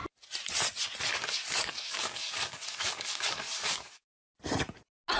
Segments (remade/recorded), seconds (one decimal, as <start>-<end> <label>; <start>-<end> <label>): 0.0-1.1 recorded; 1.1-4.2 remade; 4.2-5.2 recorded